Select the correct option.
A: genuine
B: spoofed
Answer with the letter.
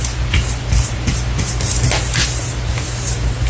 A